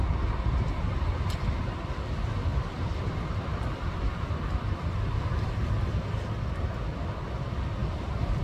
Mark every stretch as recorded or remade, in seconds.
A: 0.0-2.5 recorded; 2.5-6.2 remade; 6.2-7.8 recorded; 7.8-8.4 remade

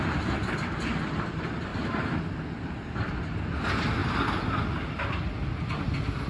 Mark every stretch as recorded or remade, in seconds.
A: 0.0-1.7 remade; 1.7-2.7 recorded; 2.7-4.0 remade; 4.0-6.3 recorded

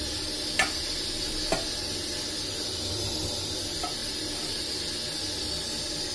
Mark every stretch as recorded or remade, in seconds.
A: 0.0-6.1 recorded

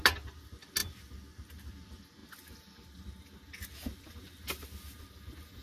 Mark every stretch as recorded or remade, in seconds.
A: 0.0-5.6 recorded